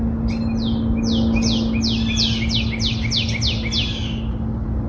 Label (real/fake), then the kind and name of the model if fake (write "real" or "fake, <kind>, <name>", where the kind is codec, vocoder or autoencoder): real